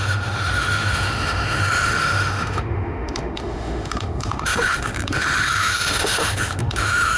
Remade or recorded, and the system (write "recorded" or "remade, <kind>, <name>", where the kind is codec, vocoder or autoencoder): remade, autoencoder, DAC-VAE